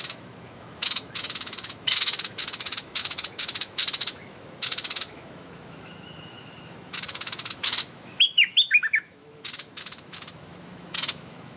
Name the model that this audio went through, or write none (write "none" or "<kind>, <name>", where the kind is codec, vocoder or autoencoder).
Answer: autoencoder, DAC-VAE